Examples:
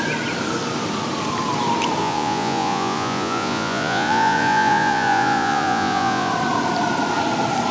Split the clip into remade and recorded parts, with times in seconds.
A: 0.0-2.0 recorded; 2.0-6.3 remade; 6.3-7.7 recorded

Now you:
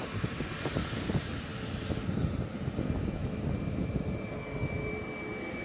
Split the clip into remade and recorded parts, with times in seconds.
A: 0.0-5.6 recorded